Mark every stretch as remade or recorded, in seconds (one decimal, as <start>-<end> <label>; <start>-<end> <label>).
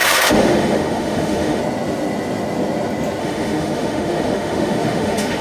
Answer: 0.0-1.6 remade; 1.6-3.2 recorded; 3.2-5.4 remade